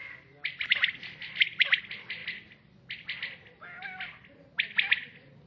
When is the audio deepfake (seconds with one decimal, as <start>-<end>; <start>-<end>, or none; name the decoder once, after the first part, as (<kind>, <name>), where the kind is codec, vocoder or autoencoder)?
none